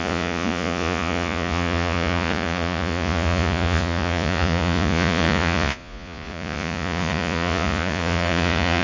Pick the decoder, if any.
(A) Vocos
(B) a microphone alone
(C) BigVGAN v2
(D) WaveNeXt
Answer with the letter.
A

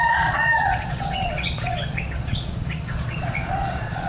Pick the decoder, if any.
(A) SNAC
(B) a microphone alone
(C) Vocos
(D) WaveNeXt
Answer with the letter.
C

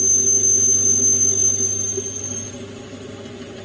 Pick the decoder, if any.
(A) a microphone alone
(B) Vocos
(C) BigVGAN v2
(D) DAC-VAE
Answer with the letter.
A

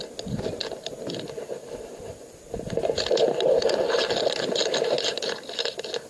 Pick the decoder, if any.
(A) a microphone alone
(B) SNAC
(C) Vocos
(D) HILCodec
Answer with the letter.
A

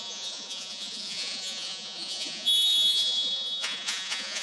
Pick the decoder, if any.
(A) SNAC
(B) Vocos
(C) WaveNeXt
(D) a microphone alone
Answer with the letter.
B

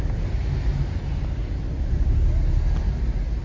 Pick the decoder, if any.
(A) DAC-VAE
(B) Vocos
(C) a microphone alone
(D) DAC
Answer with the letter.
C